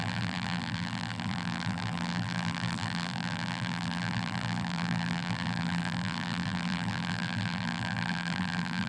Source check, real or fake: fake